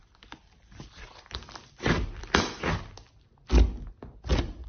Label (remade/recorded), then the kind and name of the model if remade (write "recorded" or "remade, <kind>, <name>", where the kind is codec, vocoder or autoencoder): recorded